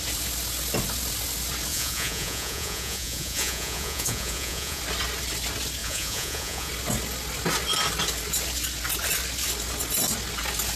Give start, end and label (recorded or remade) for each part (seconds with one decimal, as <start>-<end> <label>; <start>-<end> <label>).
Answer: 0.0-1.7 recorded; 1.7-4.8 remade; 4.8-5.8 recorded; 5.8-6.7 remade; 6.7-10.8 recorded